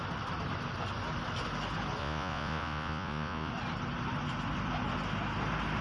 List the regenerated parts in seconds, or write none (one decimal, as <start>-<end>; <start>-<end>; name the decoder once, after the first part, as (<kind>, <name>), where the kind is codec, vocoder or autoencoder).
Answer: 2.0-3.5 (vocoder, Vocos)